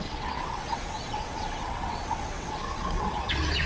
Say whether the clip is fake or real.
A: fake